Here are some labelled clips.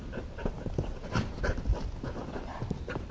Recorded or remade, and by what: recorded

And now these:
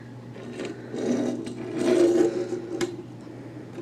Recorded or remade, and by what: recorded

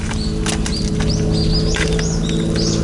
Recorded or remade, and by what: recorded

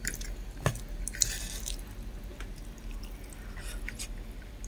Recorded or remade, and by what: recorded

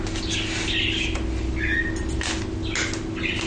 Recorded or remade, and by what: recorded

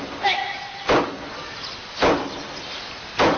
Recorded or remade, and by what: recorded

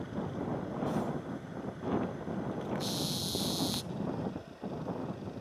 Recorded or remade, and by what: recorded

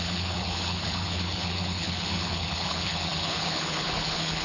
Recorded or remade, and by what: remade, codec, HILCodec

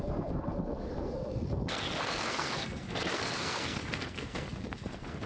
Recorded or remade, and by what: remade, codec, SNAC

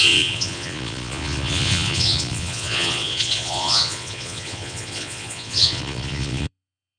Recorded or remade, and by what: remade, vocoder, Vocos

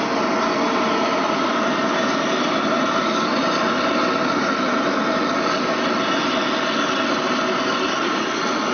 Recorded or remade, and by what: recorded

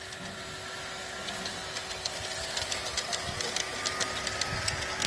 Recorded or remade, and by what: recorded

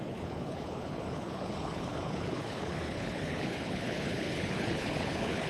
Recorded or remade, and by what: remade, codec, HILCodec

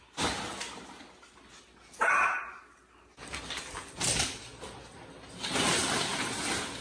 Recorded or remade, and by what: recorded